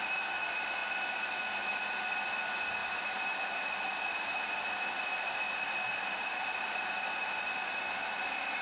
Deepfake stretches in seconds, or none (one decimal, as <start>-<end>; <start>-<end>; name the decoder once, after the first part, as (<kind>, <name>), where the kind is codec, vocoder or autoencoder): 2.8-3.6 (vocoder, BigVGAN v2)